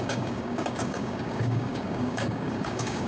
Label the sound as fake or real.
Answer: fake